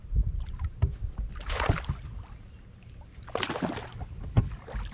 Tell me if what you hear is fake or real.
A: real